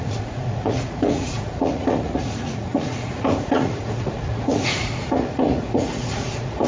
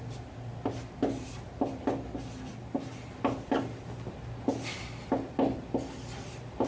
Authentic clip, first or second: second